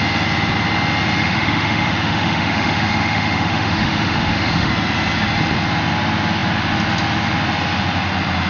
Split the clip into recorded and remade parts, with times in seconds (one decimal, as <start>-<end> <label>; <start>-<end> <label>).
0.0-1.2 recorded; 1.2-4.7 remade; 4.7-8.5 recorded